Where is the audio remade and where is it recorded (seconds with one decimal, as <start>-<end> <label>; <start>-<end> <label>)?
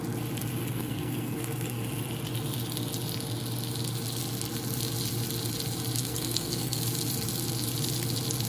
0.0-0.6 recorded; 0.6-1.8 remade; 1.8-6.0 recorded; 6.0-6.8 remade; 6.8-8.5 recorded